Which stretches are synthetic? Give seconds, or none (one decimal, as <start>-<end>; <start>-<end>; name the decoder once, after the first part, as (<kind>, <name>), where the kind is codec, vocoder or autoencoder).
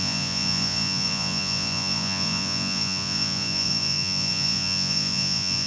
0.0-5.7 (vocoder, Vocos)